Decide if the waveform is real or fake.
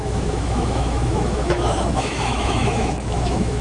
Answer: fake